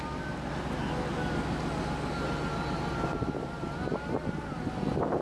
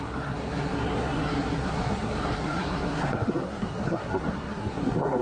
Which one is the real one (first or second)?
first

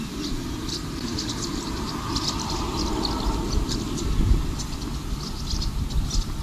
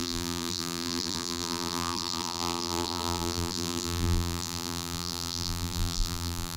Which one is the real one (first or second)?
first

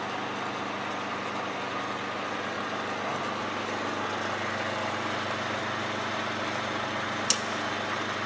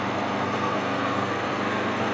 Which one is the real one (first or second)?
first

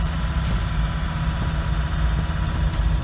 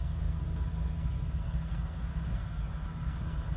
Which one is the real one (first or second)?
first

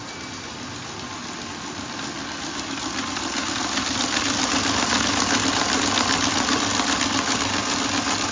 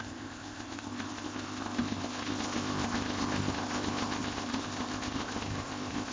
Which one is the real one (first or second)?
first